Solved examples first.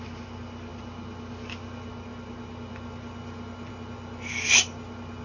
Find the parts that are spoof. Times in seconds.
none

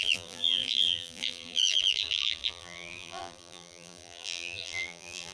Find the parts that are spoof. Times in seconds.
0.0-5.3 (vocoder, BigVGAN v2)